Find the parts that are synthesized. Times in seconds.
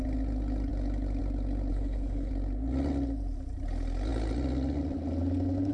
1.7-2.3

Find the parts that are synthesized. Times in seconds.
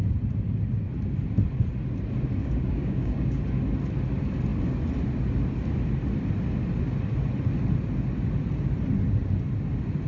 2.4-3.4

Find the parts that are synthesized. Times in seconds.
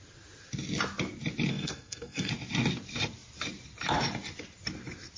1.5-2.3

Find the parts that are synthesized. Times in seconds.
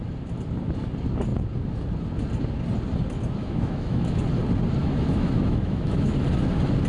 3.4-4.2; 4.8-6.1